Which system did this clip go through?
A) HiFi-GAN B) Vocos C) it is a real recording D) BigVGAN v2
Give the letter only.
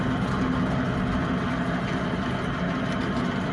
C